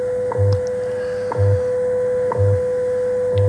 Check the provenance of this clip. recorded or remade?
recorded